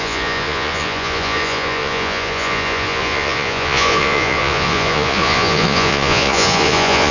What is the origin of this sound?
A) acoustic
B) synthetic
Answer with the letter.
B